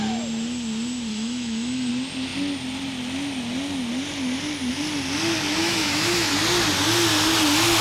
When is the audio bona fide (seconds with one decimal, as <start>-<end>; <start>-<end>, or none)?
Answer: 0.0-1.1; 1.9-5.6; 6.3-7.8